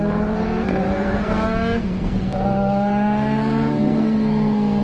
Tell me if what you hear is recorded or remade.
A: remade